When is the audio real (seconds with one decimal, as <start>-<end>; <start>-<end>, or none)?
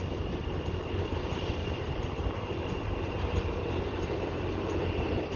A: 0.0-1.6; 4.8-5.4